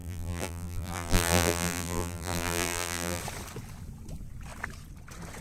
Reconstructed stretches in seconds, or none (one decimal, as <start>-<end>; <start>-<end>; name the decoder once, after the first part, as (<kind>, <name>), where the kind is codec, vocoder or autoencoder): 0.0-3.2 (vocoder, BigVGAN v2)